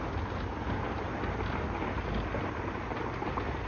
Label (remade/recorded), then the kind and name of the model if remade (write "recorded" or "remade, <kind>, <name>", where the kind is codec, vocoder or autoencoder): recorded